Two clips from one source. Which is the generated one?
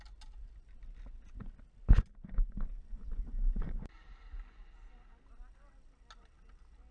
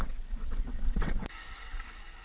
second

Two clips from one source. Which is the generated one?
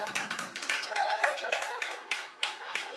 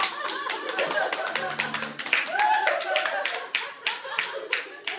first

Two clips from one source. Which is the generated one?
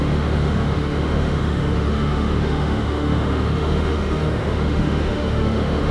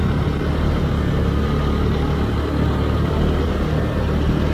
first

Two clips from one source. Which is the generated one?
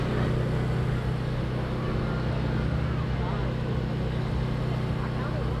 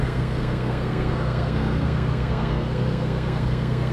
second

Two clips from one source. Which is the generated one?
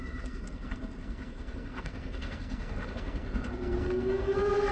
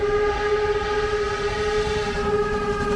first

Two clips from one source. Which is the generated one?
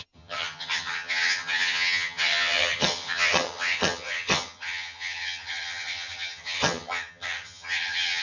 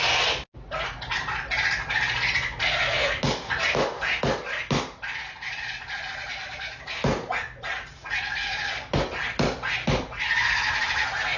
first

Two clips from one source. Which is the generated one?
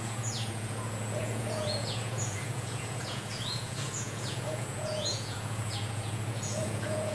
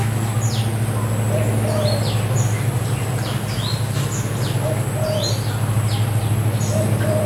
first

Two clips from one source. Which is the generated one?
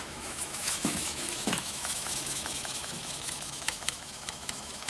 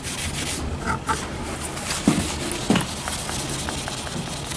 first